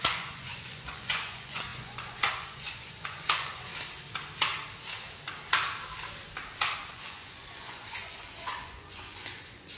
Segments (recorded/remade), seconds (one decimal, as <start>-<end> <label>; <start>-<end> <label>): 0.0-3.7 remade; 3.7-6.9 recorded; 6.9-9.8 remade